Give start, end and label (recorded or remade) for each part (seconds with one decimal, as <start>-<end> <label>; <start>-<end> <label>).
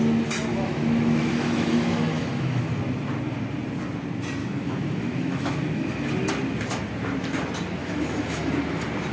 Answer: 0.0-0.5 recorded; 0.5-2.6 remade; 2.6-4.4 recorded; 4.4-6.1 remade; 6.1-7.8 recorded; 7.8-8.5 remade; 8.5-9.1 recorded